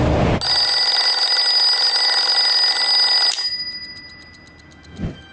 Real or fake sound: real